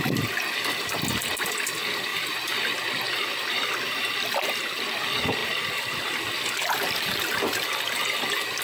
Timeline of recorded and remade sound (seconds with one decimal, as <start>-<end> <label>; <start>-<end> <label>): 0.0-2.1 recorded; 2.1-4.1 remade; 4.1-8.6 recorded